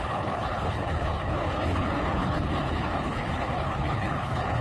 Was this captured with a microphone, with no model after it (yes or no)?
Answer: no